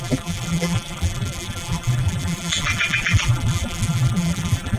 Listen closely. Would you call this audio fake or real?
fake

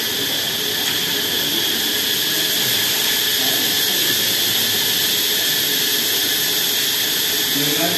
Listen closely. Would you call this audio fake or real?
real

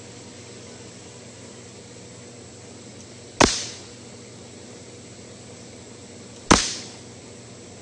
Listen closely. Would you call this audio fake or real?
real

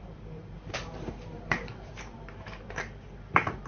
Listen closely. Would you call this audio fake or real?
fake